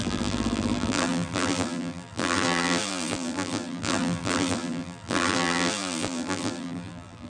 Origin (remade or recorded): remade